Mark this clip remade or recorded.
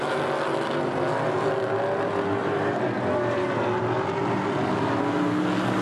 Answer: recorded